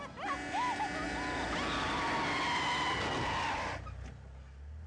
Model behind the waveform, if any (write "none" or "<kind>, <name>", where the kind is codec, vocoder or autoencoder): none